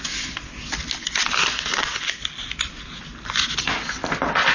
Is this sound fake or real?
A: real